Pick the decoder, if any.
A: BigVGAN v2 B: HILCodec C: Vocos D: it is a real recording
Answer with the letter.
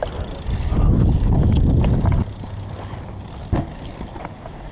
D